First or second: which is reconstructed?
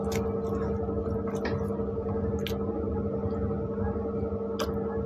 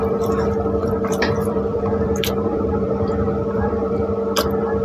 second